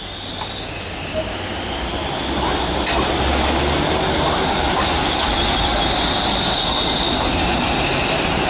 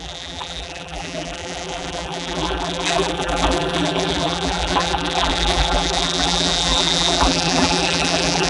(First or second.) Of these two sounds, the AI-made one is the second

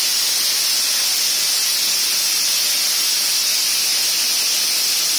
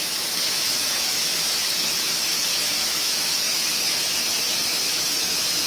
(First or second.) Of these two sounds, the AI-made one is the second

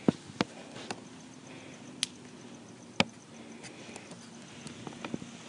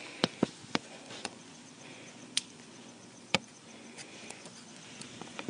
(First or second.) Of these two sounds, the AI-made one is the second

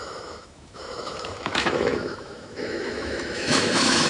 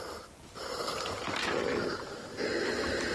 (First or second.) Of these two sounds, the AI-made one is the first